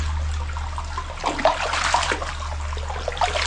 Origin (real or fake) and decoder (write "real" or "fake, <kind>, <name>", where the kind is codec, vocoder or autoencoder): real